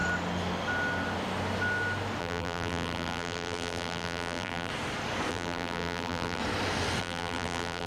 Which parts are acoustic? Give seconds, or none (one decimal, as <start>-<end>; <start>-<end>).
0.0-2.2; 4.7-5.3; 6.4-7.0